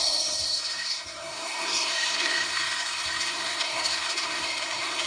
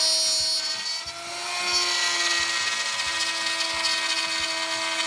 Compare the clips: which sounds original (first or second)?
second